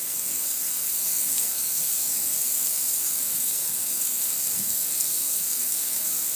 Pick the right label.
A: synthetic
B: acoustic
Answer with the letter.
A